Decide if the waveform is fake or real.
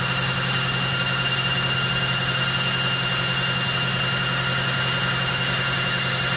real